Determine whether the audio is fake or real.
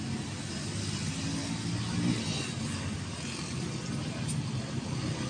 real